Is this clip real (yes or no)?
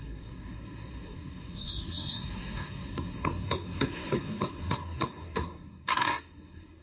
no